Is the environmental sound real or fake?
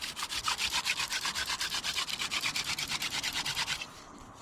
real